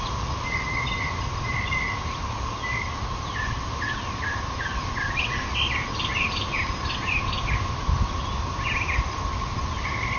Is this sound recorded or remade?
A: recorded